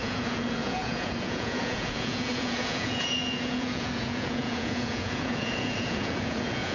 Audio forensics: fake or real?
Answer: fake